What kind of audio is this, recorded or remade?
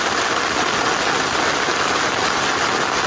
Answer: recorded